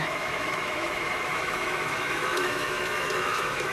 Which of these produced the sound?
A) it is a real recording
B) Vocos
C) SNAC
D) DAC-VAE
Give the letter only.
D